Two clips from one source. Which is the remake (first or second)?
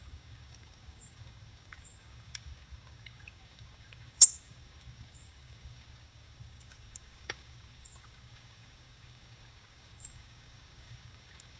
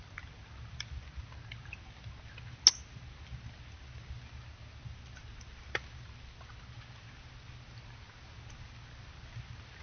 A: first